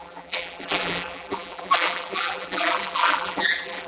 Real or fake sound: fake